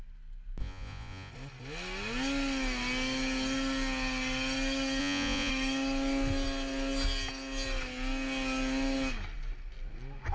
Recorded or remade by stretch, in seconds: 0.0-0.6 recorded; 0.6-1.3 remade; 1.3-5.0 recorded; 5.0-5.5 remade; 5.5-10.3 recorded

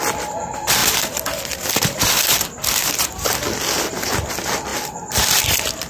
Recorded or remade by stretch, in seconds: 0.0-5.9 recorded

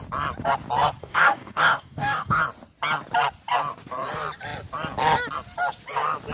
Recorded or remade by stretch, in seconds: 0.0-1.0 recorded; 1.0-2.4 remade; 2.4-6.3 recorded

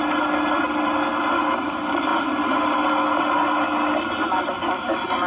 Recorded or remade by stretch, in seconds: 0.0-5.3 recorded

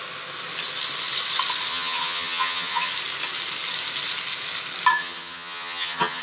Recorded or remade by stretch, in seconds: 0.0-1.7 recorded; 1.7-2.9 remade; 2.9-4.9 recorded; 4.9-6.2 remade